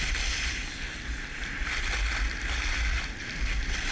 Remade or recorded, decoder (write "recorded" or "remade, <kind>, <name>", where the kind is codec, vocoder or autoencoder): recorded